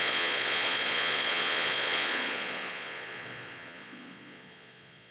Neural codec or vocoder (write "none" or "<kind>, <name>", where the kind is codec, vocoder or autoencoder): vocoder, Vocos